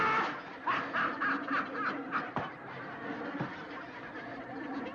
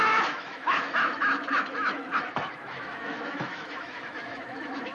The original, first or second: first